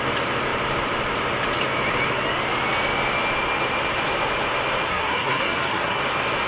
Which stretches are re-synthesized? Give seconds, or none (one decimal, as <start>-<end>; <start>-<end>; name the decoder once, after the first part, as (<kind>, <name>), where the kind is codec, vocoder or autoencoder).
4.9-6.0 (codec, SNAC)